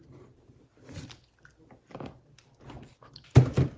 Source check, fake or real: real